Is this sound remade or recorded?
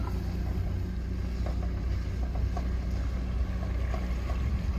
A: recorded